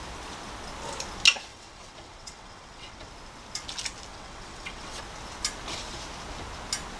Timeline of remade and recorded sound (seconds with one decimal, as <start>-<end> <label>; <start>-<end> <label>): 0.0-1.5 recorded; 1.5-3.1 remade; 3.1-4.1 recorded; 4.1-5.0 remade; 5.0-7.0 recorded